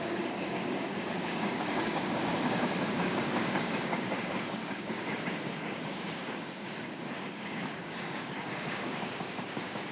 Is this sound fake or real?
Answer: fake